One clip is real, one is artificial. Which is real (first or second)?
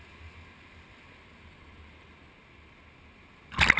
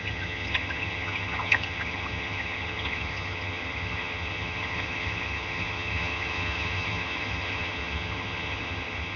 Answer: first